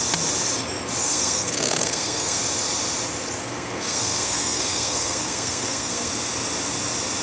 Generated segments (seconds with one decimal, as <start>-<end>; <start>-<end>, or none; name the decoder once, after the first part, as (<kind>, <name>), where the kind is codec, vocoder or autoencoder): 1.0-2.4 (codec, SNAC); 3.4-6.1